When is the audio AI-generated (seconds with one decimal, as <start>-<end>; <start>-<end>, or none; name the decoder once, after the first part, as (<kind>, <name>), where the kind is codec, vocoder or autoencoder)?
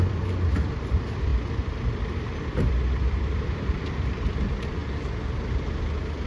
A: 0.0-1.3 (vocoder, BigVGAN v2); 2.7-4.8; 5.5-6.3